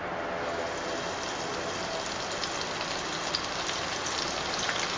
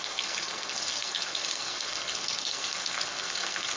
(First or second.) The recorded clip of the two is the first